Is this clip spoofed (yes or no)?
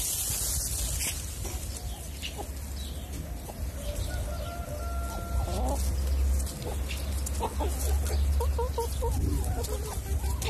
no